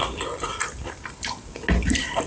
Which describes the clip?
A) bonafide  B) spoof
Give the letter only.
A